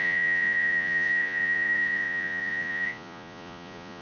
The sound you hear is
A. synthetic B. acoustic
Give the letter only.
A